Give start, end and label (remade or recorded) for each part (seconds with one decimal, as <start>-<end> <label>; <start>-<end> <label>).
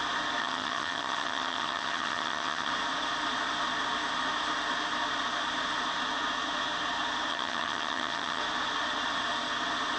0.0-0.4 recorded; 0.4-2.7 remade; 2.7-7.3 recorded; 7.3-8.4 remade; 8.4-10.0 recorded